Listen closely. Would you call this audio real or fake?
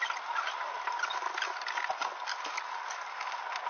real